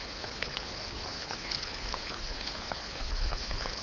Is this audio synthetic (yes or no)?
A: yes